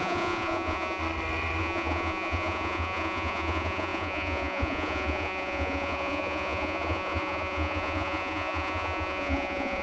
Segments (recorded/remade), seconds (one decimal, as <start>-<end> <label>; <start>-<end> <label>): 0.0-1.0 remade; 1.0-1.6 recorded; 1.6-9.8 remade